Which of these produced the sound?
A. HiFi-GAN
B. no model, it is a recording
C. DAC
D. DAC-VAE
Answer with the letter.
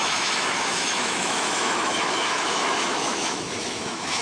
D